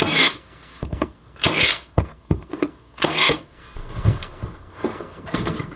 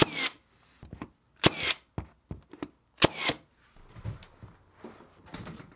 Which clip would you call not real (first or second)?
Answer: first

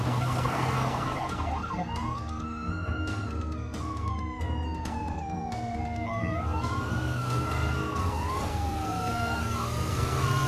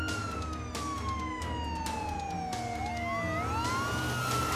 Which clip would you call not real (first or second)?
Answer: first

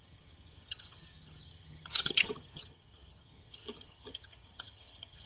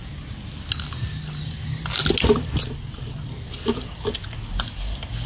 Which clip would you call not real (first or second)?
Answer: first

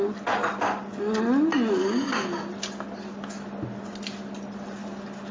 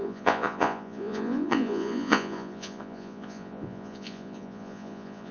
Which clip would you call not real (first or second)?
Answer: second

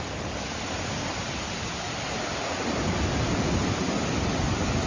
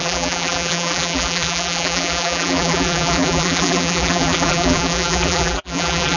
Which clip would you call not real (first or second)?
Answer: second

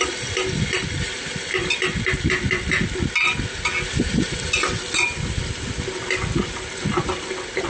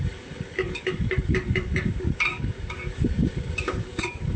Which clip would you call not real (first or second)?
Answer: second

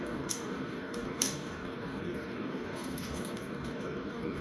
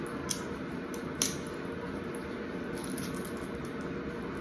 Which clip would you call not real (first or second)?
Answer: first